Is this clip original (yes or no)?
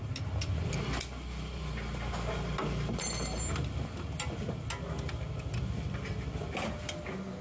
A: yes